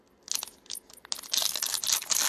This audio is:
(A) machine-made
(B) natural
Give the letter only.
B